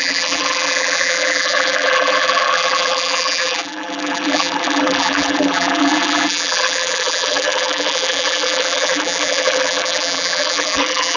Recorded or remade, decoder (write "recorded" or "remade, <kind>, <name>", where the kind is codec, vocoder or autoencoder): remade, vocoder, BigVGAN v2